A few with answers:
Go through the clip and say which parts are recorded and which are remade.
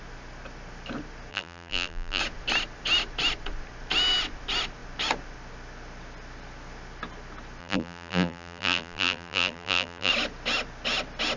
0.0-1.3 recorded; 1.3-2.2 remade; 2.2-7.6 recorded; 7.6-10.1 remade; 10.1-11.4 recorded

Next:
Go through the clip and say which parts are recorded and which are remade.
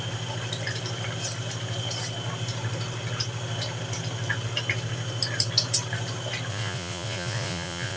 0.0-6.5 recorded; 6.5-8.0 remade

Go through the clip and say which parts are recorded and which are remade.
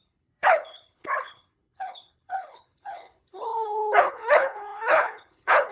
0.0-5.7 remade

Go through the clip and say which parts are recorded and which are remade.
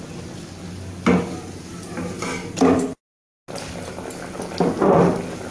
0.0-5.5 recorded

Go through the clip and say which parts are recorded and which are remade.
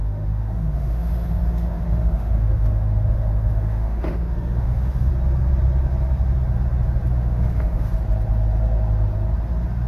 0.0-5.1 remade; 5.1-7.2 recorded; 7.2-7.9 remade; 7.9-9.9 recorded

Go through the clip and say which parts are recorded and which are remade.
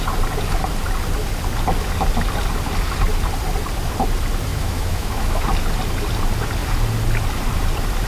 0.0-4.5 recorded; 4.5-5.5 remade; 5.5-8.1 recorded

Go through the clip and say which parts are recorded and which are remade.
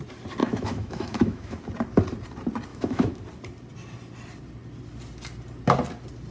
0.0-0.4 recorded; 0.4-1.6 remade; 1.6-2.7 recorded; 2.7-3.2 remade; 3.2-6.3 recorded